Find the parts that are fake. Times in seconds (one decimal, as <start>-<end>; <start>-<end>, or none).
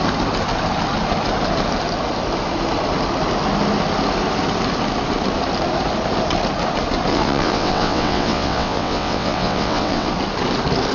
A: 7.1-10.1